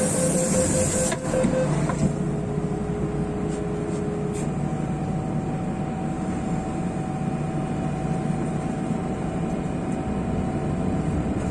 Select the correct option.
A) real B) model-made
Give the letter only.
A